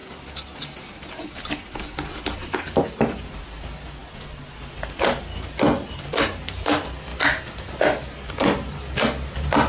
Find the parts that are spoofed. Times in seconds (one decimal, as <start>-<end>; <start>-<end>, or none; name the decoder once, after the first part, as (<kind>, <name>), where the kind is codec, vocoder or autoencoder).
none